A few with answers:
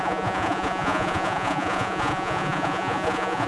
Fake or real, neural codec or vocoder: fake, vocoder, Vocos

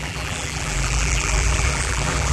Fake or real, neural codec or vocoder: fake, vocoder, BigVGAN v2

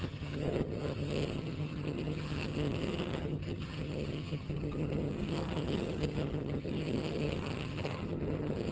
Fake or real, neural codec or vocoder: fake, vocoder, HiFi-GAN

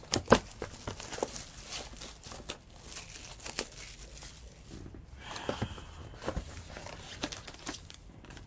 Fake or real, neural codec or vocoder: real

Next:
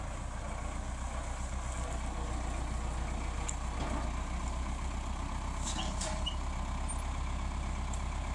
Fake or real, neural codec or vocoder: real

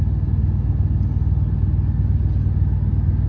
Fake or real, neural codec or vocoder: real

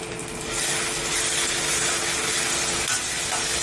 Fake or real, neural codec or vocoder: real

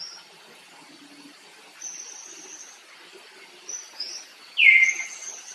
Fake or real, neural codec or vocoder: real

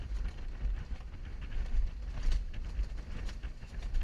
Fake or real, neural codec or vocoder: real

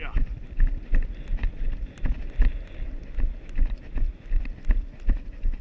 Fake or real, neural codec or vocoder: real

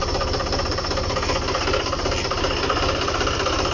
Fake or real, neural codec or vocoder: real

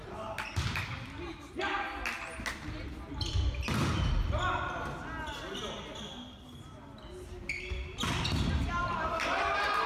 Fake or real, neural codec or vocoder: real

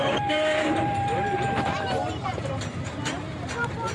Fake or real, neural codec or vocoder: fake, vocoder, BigVGAN v2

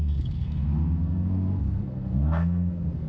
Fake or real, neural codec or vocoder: fake, codec, SNAC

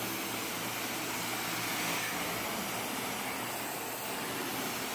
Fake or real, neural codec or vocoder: real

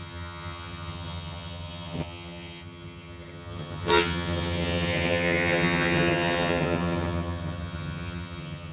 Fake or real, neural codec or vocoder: fake, vocoder, HiFi-GAN